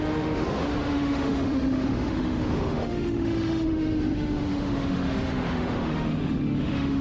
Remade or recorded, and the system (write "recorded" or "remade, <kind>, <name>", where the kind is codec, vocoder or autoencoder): remade, autoencoder, DAC-VAE